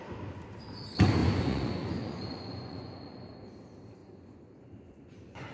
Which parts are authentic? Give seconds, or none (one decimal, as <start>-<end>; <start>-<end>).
0.0-1.2; 3.3-4.0